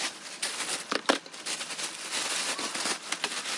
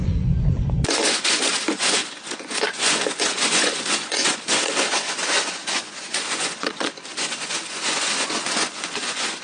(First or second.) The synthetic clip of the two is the second